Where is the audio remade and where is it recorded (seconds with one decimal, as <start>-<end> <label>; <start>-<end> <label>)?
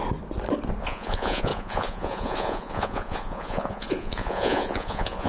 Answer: 0.0-0.8 recorded; 0.8-5.3 remade